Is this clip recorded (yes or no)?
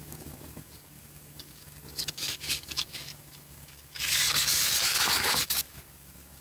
no